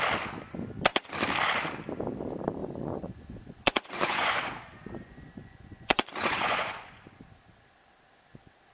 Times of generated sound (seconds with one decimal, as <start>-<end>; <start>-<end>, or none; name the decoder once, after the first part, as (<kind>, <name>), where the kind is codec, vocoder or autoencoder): 2.6-7.2 (vocoder, Vocos)